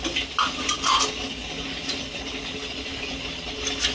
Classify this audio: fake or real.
real